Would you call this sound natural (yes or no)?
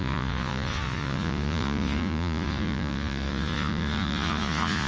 no